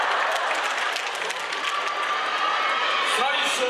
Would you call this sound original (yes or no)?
yes